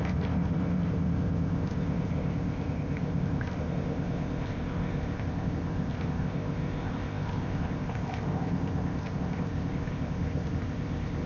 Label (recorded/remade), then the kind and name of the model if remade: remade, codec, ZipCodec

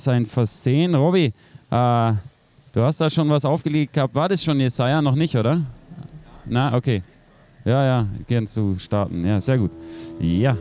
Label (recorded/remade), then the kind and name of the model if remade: recorded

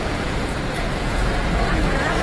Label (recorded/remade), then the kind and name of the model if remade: remade, vocoder, Vocos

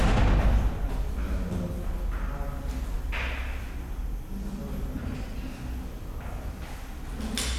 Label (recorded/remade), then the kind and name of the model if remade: recorded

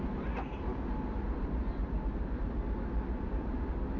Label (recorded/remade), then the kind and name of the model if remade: recorded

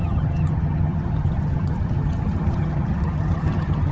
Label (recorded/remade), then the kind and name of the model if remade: remade, vocoder, HiFi-GAN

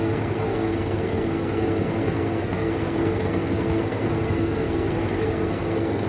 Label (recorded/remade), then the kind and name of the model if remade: remade, codec, SNAC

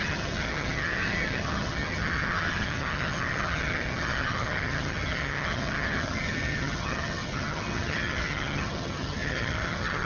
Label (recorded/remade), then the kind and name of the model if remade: remade, vocoder, HiFi-GAN